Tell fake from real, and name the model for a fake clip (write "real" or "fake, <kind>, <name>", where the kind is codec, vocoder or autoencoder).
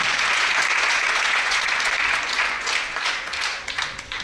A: fake, vocoder, Vocos